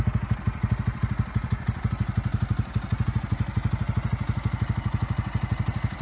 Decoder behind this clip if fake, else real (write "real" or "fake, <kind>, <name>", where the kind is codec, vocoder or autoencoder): real